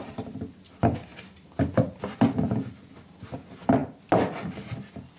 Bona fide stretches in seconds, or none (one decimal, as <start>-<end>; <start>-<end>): 0.0-5.2